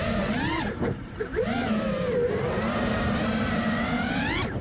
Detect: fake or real fake